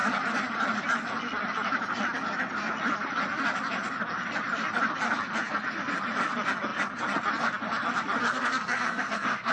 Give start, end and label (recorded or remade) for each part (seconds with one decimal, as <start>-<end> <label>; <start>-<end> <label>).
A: 0.0-8.2 recorded; 8.2-9.5 remade